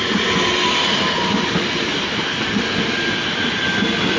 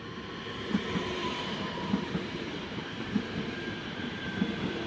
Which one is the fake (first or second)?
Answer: second